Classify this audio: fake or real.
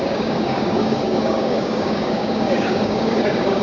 fake